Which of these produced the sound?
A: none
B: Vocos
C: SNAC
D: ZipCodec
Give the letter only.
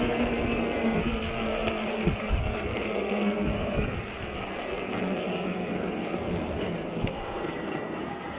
C